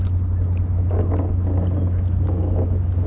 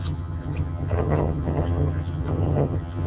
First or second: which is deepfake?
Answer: second